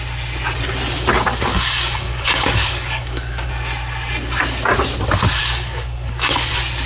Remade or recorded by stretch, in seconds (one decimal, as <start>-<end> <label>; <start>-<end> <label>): 0.0-1.5 recorded; 1.5-3.5 remade; 3.5-5.4 recorded; 5.4-6.5 remade; 6.5-6.9 recorded